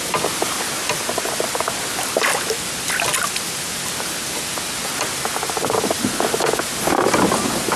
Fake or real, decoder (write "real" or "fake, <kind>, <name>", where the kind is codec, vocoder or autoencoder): real